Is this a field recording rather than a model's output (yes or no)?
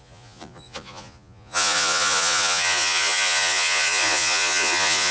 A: no